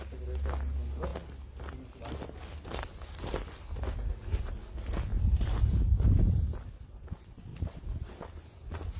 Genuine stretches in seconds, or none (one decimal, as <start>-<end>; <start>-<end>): 0.0-5.1; 6.5-7.5; 8.1-9.0